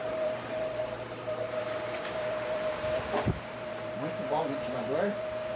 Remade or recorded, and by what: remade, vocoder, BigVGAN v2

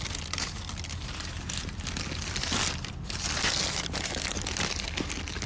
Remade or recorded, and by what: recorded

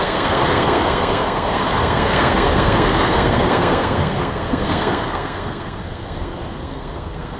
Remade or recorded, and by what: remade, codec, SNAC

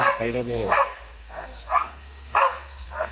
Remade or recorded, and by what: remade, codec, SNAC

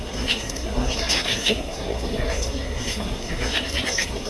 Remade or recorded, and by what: remade, codec, SNAC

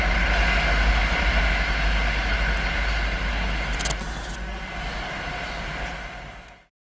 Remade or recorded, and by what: recorded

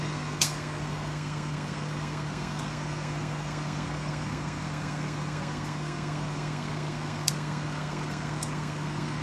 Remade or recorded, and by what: remade, codec, SNAC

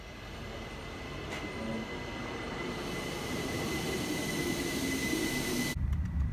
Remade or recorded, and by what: recorded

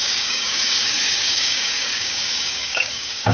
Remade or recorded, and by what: remade, codec, DAC